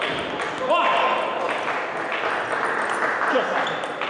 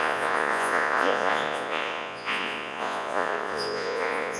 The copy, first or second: second